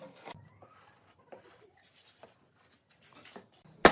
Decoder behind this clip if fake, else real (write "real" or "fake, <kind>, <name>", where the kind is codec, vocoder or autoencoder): real